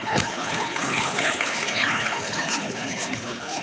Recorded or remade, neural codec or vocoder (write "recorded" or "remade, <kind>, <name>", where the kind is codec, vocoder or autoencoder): remade, codec, HILCodec